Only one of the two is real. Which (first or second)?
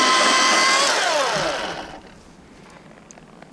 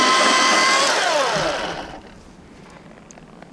first